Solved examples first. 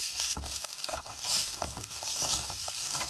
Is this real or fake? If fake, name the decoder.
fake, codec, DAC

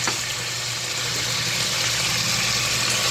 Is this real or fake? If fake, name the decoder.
real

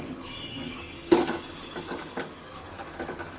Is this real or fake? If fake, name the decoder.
fake, codec, DAC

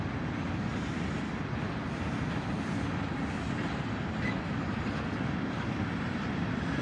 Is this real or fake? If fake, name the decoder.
real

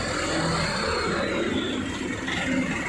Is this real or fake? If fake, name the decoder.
real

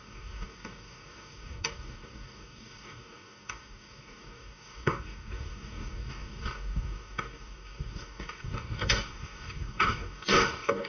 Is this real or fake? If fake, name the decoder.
fake, codec, DAC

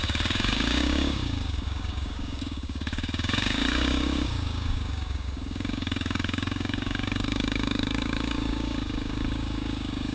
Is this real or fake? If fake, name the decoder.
fake, codec, DAC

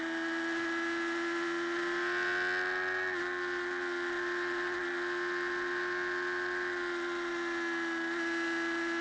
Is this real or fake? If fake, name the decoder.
real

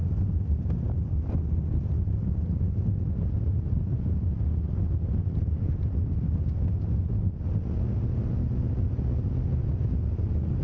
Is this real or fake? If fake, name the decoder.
real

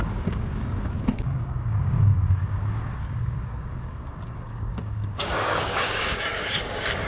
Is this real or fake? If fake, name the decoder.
fake, codec, DAC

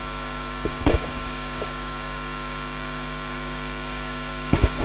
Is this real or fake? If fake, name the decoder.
fake, codec, DAC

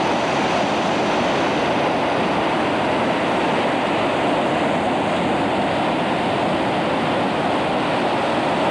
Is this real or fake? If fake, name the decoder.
real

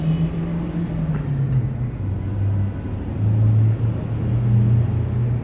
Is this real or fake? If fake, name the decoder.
real